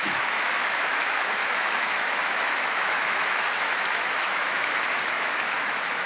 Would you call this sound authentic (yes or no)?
no